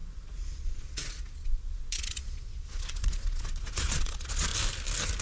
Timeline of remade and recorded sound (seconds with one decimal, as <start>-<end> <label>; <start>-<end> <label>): 0.0-4.5 remade; 4.5-5.2 recorded